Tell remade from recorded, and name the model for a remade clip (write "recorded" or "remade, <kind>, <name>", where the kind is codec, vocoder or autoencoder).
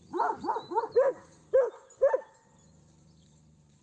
recorded